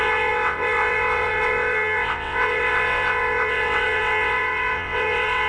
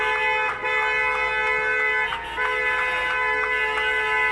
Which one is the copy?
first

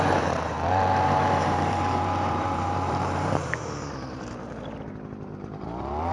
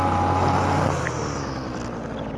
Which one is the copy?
first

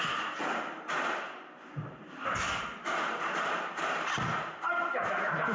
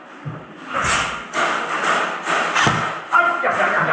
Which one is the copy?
first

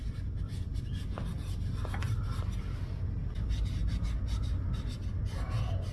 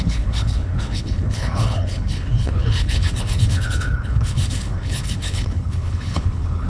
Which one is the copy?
second